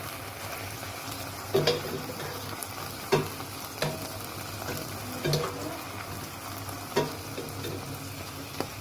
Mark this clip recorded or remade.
recorded